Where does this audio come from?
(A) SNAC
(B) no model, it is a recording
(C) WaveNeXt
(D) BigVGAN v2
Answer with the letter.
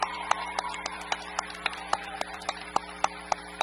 D